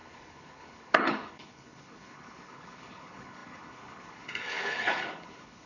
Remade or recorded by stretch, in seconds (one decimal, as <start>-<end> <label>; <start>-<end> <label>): 0.0-5.7 remade